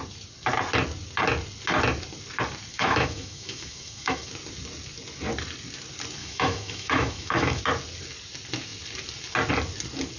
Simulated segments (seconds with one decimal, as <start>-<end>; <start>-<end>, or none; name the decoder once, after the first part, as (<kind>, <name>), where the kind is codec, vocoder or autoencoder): 2.7-4.3 (autoencoder, DAC-VAE); 6.2-7.6